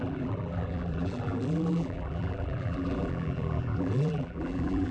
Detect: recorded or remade remade